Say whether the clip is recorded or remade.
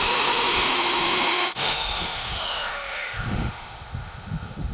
remade